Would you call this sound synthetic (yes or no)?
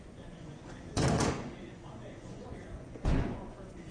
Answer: yes